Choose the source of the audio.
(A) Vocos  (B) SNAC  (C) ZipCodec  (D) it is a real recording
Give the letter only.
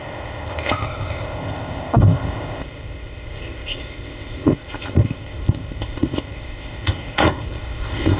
C